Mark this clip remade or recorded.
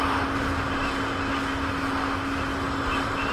recorded